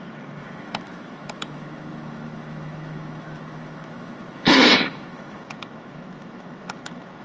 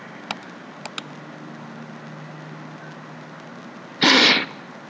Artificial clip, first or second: first